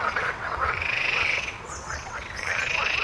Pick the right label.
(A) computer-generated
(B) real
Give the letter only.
A